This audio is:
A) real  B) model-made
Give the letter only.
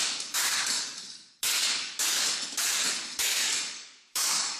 B